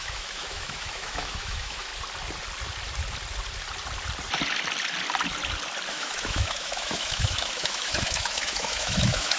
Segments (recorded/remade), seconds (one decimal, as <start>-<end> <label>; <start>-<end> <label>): 0.0-1.9 remade; 1.9-5.9 recorded; 5.9-9.4 remade